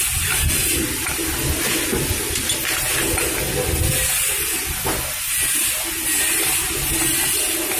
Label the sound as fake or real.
real